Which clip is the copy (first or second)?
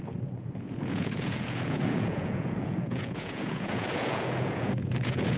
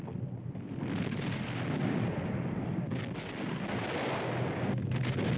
first